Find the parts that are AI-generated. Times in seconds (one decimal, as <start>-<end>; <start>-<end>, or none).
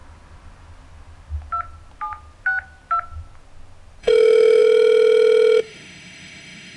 4.0-6.8